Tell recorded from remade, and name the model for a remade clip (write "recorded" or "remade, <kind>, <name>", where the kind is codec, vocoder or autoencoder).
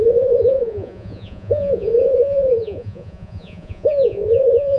remade, vocoder, Vocos